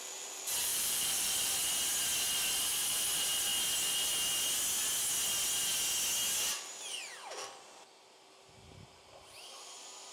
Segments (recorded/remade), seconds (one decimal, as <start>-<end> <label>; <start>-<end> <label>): 0.0-0.7 recorded; 0.7-1.5 remade; 1.5-10.1 recorded